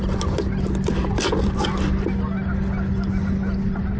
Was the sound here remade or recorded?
recorded